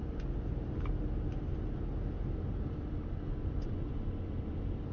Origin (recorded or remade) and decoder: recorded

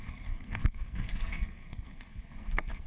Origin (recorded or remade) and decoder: remade, codec, SNAC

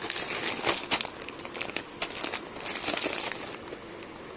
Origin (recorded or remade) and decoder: recorded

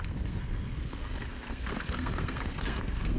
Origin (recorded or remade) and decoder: remade, codec, SNAC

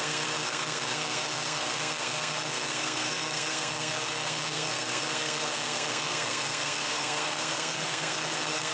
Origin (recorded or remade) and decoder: remade, codec, SNAC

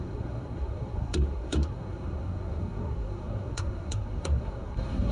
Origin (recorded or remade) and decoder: remade, codec, SNAC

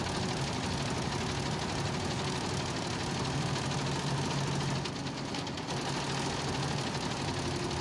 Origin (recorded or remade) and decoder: recorded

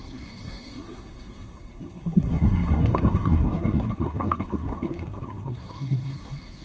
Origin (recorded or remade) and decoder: remade, codec, SNAC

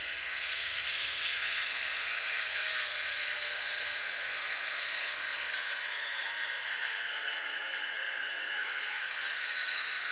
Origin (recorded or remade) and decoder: remade, codec, SNAC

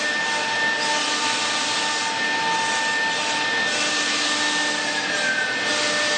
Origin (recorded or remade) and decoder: recorded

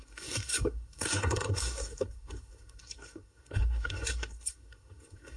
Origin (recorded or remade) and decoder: remade, codec, SNAC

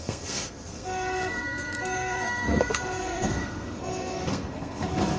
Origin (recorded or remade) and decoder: remade, codec, SNAC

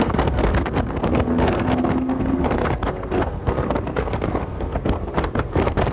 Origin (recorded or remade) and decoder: remade, codec, SNAC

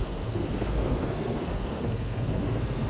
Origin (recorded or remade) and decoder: remade, codec, SNAC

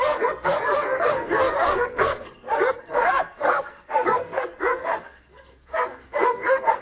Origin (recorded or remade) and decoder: remade, codec, SNAC